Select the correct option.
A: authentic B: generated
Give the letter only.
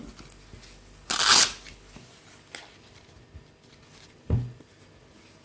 A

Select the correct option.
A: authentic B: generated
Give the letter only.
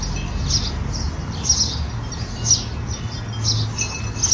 A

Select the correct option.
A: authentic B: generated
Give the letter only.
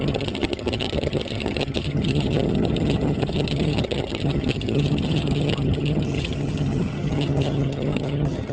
B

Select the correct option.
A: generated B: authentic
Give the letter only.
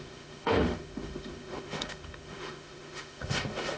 A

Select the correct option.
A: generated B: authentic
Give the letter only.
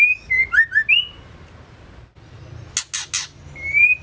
B